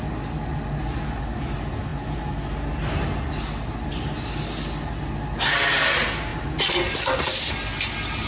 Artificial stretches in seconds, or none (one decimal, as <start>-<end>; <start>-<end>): none